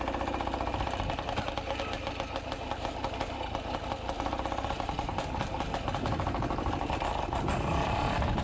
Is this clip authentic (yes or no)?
yes